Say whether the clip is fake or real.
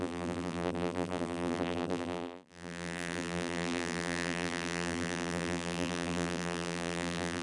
fake